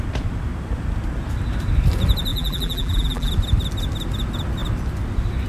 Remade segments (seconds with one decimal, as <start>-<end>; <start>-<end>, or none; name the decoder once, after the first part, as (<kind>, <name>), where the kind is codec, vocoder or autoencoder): 2.3-3.3 (vocoder, BigVGAN v2)